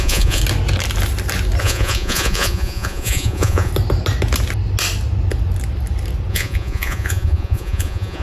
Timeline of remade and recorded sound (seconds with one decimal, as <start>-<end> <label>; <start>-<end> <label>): 0.0-0.4 remade; 0.4-1.6 recorded; 1.6-3.7 remade; 3.7-6.3 recorded; 6.3-8.2 remade